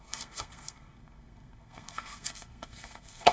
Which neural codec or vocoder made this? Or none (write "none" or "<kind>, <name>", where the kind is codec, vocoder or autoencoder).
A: codec, SNAC